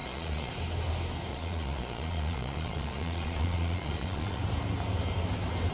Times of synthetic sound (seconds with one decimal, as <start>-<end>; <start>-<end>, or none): 0.0-0.5; 1.3-4.4